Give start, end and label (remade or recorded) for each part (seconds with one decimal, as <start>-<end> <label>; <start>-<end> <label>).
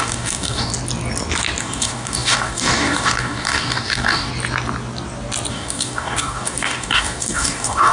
0.0-0.7 remade; 0.7-1.6 recorded; 1.6-4.3 remade; 4.3-5.5 recorded; 5.5-7.9 remade